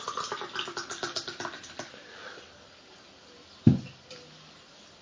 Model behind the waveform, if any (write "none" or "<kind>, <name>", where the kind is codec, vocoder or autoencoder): none